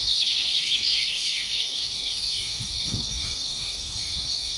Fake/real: fake